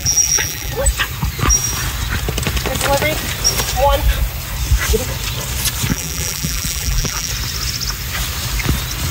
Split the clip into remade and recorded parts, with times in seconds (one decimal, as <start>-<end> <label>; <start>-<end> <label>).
0.0-0.7 remade; 0.7-5.9 recorded; 5.9-7.3 remade; 7.3-9.1 recorded